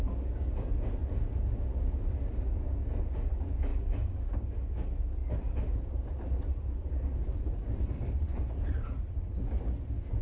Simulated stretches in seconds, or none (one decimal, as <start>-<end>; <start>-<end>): 5.2-7.9